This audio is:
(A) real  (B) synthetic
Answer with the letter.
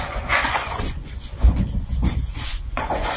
B